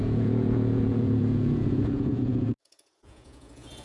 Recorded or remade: remade